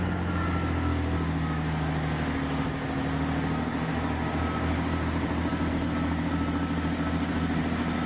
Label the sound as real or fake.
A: real